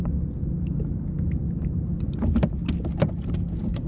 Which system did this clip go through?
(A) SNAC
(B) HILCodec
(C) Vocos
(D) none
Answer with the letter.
D